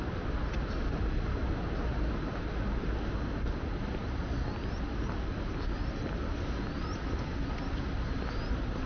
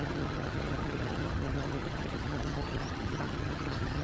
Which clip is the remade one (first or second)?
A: second